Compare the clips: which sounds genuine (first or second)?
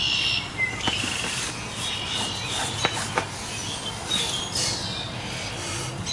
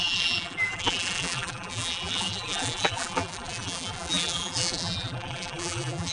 first